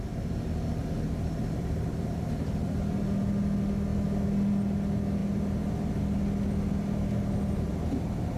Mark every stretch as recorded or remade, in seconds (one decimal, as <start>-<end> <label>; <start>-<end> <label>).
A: 0.0-0.8 recorded; 0.8-3.2 remade; 3.2-8.4 recorded